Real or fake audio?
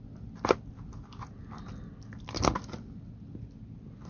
real